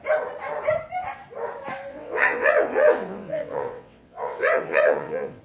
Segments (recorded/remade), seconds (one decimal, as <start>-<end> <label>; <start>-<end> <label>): 0.0-1.9 recorded; 1.9-5.4 remade